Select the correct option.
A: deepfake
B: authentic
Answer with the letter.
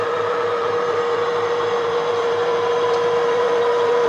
A